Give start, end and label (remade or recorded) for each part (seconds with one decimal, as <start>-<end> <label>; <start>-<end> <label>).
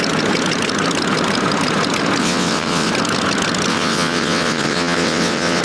0.0-2.2 recorded; 2.2-2.9 remade; 2.9-3.7 recorded; 3.7-5.6 remade